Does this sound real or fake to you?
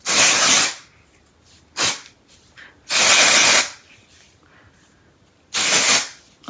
real